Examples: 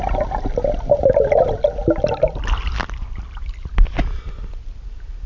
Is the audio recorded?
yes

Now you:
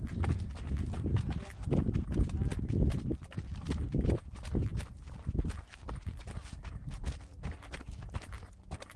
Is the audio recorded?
yes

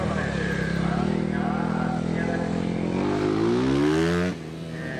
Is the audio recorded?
yes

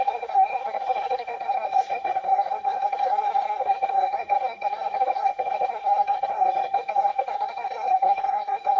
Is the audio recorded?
no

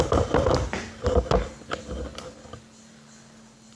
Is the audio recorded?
yes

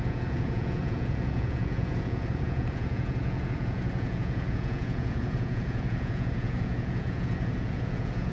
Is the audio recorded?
no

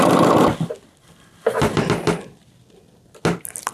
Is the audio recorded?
yes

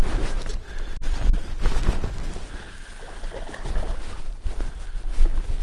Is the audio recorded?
yes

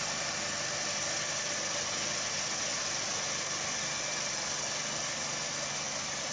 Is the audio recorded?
yes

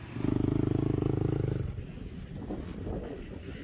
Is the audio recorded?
yes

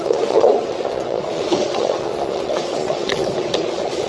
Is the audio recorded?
no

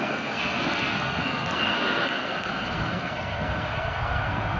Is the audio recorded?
no